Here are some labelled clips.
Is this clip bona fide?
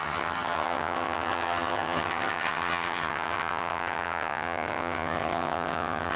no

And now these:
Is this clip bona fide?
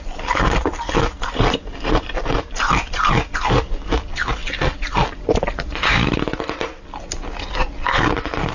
yes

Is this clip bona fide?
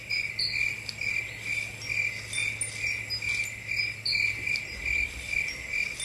yes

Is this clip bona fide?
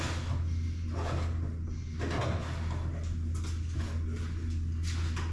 yes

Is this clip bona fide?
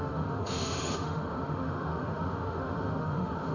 no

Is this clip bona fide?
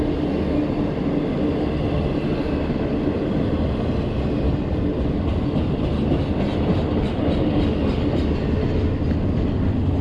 yes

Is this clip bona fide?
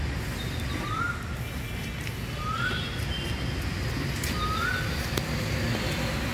yes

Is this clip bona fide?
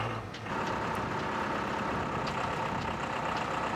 yes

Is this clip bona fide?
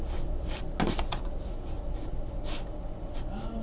yes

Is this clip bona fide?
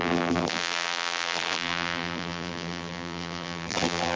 no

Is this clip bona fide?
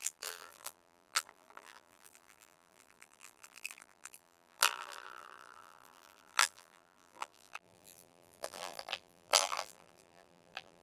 no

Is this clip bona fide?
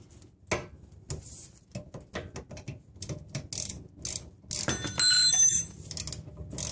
yes